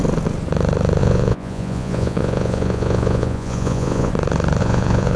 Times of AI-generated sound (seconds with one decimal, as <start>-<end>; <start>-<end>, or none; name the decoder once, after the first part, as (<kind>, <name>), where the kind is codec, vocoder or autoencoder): 1.0-4.1 (vocoder, Vocos); 4.6-5.2